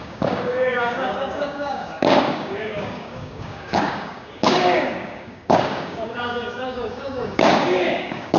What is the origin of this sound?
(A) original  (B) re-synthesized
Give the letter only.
B